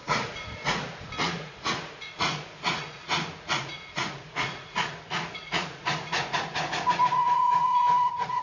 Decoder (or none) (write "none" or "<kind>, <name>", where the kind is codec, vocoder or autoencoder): vocoder, Vocos